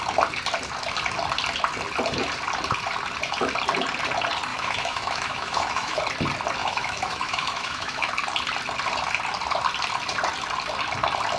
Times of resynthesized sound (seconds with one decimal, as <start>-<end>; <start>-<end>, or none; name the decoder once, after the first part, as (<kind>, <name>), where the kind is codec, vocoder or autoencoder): 4.5-6.0 (autoencoder, DAC-VAE); 6.6-8.1